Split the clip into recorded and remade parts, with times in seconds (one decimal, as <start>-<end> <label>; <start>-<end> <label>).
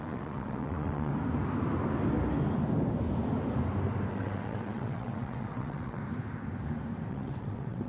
0.0-1.1 remade; 1.1-4.1 recorded; 4.1-6.0 remade; 6.0-7.1 recorded; 7.1-7.9 remade